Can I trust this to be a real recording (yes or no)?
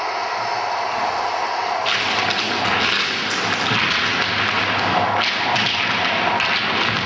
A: yes